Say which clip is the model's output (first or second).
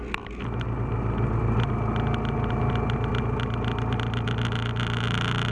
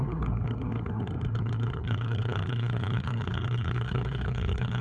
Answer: second